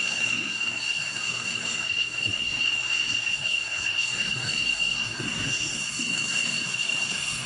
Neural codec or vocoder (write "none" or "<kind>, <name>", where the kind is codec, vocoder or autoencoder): codec, SNAC